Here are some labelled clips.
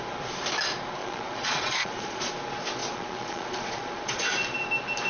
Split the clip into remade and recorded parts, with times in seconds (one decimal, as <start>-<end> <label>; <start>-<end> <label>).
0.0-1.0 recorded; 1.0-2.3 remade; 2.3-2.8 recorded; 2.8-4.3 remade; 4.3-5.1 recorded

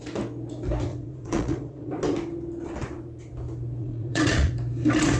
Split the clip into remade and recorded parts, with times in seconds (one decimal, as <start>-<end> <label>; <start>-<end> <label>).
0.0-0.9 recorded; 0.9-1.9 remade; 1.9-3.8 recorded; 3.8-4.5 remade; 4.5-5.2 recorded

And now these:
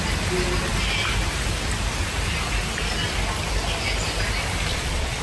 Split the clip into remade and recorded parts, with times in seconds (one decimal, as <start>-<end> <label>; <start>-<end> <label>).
0.0-4.7 recorded; 4.7-5.2 remade

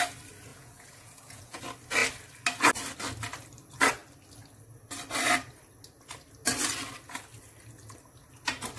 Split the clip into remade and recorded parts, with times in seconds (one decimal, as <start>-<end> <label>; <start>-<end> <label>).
0.0-0.5 recorded; 0.5-1.6 remade; 1.6-8.8 recorded

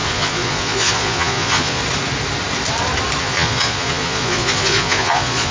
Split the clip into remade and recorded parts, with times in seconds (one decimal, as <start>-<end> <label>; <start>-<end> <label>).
0.0-1.8 remade; 1.8-3.2 recorded; 3.2-5.5 remade

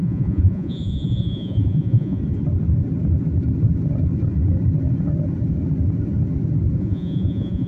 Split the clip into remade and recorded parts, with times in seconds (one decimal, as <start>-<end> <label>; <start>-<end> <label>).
0.0-2.2 remade; 2.2-6.8 recorded; 6.8-7.7 remade

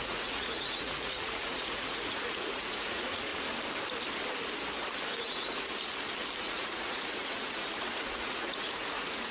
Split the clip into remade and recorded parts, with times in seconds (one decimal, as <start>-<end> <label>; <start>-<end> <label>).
0.0-3.3 remade; 3.3-5.3 recorded; 5.3-5.7 remade; 5.7-6.4 recorded; 6.4-9.3 remade

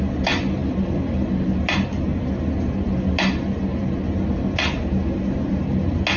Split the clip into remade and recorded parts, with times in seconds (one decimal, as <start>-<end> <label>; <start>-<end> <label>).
0.0-6.2 recorded